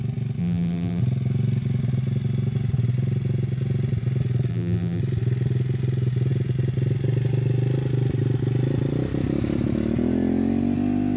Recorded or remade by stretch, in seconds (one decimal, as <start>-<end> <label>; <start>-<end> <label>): 0.0-0.4 recorded; 0.4-1.0 remade; 1.0-4.5 recorded; 4.5-5.0 remade; 5.0-11.2 recorded

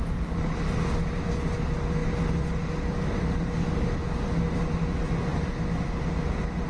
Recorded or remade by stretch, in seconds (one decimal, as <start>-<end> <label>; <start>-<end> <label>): 0.0-6.7 recorded